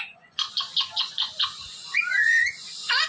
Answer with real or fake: fake